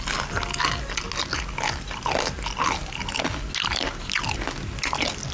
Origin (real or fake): real